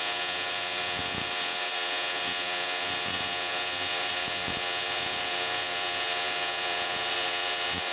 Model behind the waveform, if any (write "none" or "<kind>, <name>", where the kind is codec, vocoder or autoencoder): vocoder, Vocos